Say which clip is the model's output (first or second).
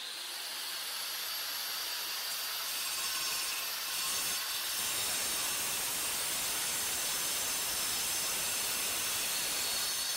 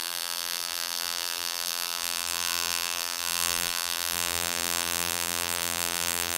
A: second